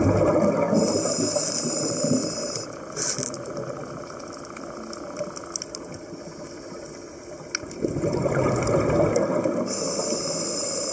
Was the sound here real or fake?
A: real